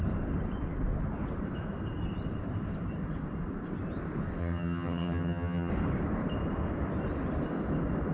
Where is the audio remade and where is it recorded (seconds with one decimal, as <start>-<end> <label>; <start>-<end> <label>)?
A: 0.0-4.4 recorded; 4.4-5.7 remade; 5.7-8.1 recorded